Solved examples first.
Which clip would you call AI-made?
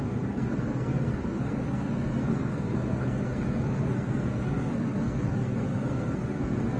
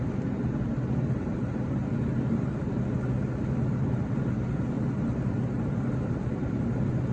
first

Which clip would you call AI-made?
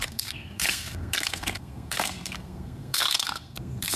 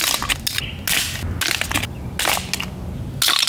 first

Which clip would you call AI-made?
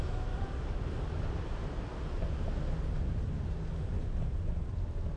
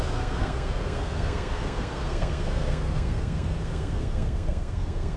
second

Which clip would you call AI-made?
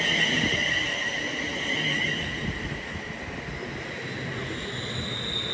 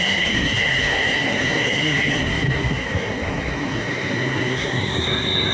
second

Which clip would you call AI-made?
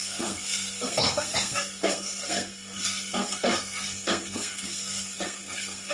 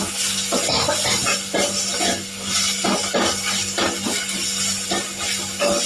first